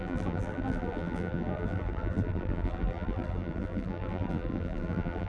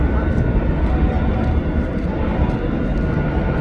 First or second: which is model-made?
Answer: first